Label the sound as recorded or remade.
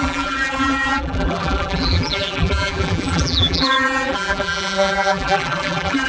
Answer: remade